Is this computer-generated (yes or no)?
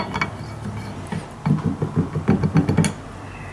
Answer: no